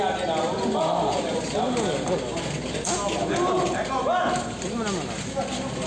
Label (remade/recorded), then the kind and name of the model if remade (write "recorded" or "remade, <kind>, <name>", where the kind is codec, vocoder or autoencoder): recorded